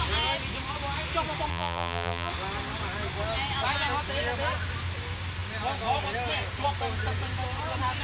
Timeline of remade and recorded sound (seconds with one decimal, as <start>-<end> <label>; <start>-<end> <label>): 0.0-1.5 recorded; 1.5-2.3 remade; 2.3-8.0 recorded